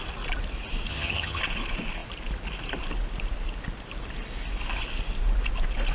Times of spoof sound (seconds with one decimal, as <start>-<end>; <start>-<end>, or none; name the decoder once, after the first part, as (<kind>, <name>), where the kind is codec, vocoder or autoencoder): 0.9-1.4 (vocoder, HiFi-GAN)